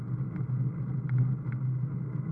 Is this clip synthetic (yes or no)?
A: no